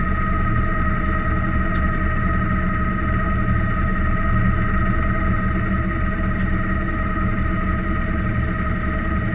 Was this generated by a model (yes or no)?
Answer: no